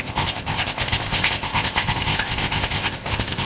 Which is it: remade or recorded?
remade